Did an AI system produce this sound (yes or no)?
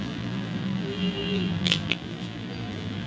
yes